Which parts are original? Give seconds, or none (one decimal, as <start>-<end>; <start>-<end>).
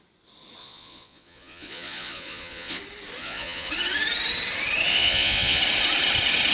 0.0-0.6; 2.8-3.2; 3.7-4.9; 5.6-6.5